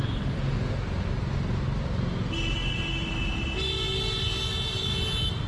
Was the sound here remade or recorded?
recorded